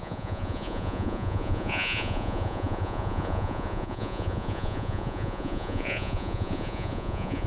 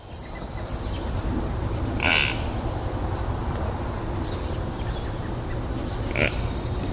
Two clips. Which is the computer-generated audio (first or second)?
first